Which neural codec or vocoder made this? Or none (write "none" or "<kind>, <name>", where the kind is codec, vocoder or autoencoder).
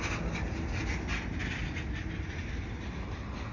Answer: none